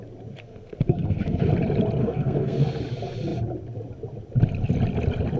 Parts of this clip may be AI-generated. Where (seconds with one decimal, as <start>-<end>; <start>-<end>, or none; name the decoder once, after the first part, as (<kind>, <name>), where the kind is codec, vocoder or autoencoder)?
0.4-1.5 (codec, SNAC); 2.0-2.8